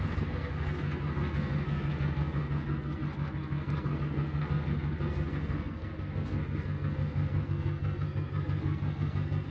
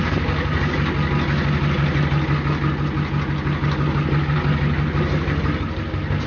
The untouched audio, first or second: second